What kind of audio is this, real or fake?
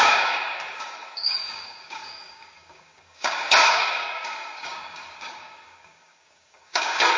fake